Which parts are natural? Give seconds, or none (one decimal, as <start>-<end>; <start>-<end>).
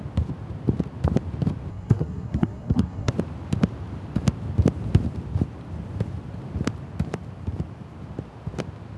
0.0-1.7; 3.1-9.0